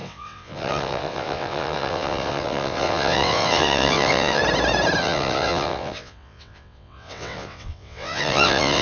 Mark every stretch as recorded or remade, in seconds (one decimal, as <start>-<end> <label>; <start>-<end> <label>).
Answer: 0.0-4.4 remade; 4.4-5.0 recorded; 5.0-8.8 remade